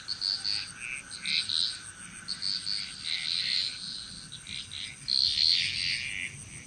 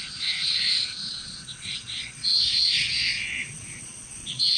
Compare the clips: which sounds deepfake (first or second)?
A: second